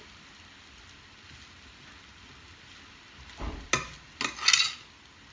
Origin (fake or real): real